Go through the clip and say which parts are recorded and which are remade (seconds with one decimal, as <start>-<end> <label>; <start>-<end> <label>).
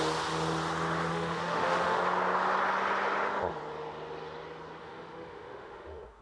0.0-1.1 recorded; 1.1-2.0 remade; 2.0-4.8 recorded; 4.8-6.2 remade